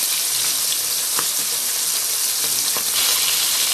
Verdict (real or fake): real